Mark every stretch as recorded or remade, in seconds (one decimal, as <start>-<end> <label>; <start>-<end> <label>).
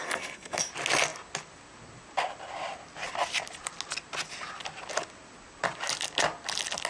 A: 0.0-0.7 remade; 0.7-6.9 recorded